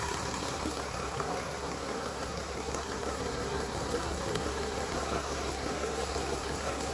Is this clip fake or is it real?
fake